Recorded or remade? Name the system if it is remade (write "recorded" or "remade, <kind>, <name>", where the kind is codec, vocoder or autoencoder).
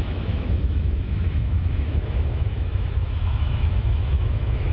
remade, autoencoder, DAC-VAE